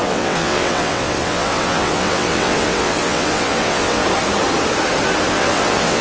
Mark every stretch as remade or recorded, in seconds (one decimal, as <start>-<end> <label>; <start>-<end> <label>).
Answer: 0.0-4.0 remade; 4.0-5.3 recorded; 5.3-6.0 remade